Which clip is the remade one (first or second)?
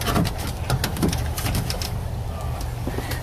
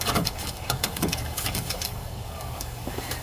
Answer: second